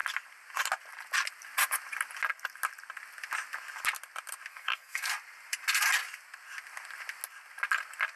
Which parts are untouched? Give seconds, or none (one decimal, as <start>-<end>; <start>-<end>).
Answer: 0.0-4.5; 5.1-8.2